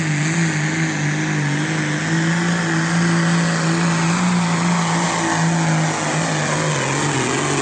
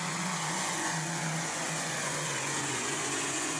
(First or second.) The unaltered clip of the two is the first